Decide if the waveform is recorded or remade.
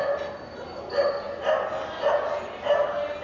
recorded